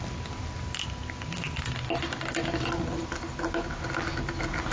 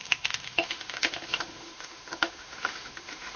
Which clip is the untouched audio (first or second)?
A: first